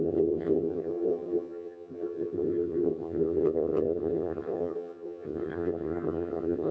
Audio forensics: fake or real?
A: fake